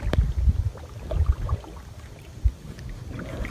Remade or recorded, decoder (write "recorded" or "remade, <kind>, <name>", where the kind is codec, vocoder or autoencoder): recorded